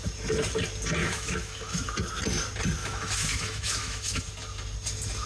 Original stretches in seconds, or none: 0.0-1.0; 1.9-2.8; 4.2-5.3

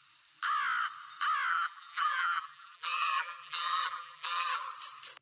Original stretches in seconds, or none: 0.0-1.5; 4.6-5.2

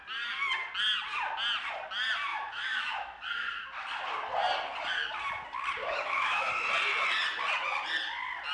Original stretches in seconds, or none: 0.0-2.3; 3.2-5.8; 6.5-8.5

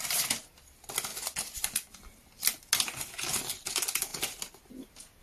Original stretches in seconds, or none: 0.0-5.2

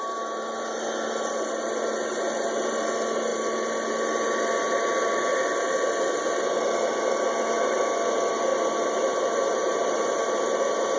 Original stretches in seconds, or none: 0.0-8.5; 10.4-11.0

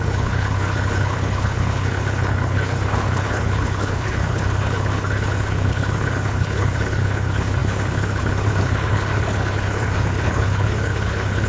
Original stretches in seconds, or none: none